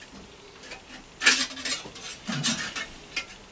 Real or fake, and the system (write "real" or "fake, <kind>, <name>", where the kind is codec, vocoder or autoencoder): real